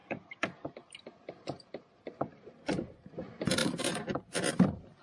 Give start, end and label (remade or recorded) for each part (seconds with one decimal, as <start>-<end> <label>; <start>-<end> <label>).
0.0-2.5 remade; 2.5-3.6 recorded; 3.6-4.5 remade; 4.5-5.0 recorded